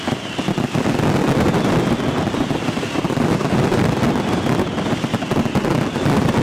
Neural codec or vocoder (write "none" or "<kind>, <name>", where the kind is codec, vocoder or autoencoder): vocoder, BigVGAN v2